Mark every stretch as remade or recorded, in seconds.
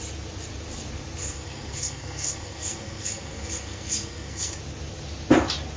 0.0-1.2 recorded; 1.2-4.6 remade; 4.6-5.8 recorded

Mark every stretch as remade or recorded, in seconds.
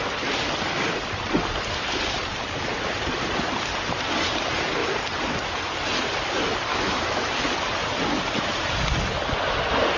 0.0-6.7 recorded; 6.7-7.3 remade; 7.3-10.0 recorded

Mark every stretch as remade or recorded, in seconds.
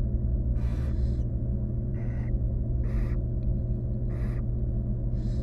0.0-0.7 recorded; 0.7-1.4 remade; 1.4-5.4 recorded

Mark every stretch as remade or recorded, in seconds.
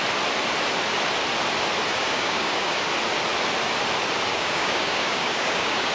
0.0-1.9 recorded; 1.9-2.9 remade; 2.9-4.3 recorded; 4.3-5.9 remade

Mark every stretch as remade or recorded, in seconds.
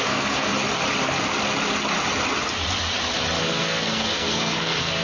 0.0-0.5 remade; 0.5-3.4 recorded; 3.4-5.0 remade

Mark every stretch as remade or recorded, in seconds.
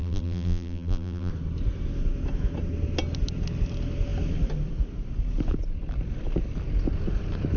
0.0-1.3 remade; 1.3-7.6 recorded